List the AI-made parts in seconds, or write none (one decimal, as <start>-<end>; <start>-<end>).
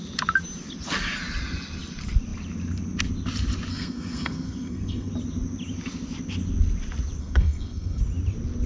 3.7-5.1; 7.2-8.0